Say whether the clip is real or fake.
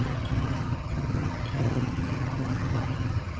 fake